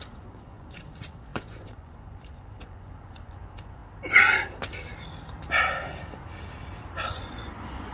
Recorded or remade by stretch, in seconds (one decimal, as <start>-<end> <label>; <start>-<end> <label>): 0.0-3.8 remade; 3.8-7.1 recorded; 7.1-7.9 remade